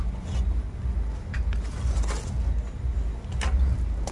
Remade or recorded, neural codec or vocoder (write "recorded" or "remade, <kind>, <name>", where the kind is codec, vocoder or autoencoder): recorded